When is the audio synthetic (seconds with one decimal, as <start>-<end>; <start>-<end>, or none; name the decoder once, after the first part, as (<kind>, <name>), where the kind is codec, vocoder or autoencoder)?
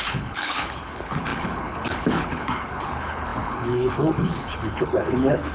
0.0-5.5 (codec, HILCodec)